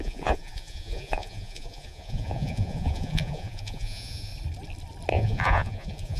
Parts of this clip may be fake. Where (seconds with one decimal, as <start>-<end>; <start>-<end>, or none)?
0.0-4.3; 5.1-6.2